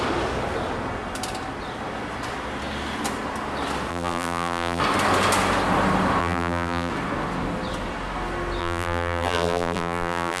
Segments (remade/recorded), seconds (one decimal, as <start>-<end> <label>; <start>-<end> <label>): 0.0-3.9 recorded; 3.9-4.8 remade; 4.8-6.2 recorded; 6.2-6.9 remade; 6.9-8.6 recorded; 8.6-10.4 remade